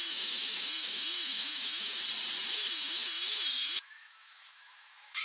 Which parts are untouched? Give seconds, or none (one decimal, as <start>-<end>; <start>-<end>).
2.0-2.5